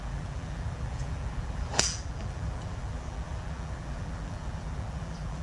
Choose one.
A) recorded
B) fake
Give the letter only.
B